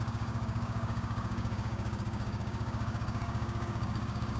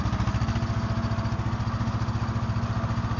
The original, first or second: second